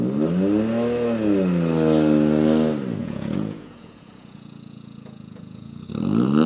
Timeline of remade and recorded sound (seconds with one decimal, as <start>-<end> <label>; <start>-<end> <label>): 0.0-3.0 recorded; 3.0-5.9 remade; 5.9-6.5 recorded